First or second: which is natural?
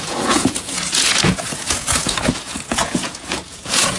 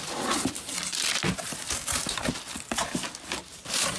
second